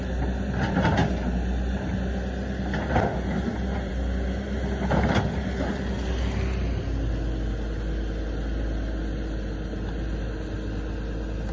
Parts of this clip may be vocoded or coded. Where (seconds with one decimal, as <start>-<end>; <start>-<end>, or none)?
none